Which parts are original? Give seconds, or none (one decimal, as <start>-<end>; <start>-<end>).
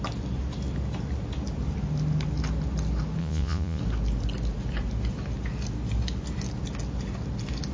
0.0-3.2; 3.8-7.7